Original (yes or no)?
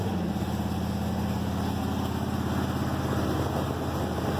yes